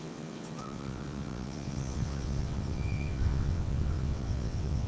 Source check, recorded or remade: remade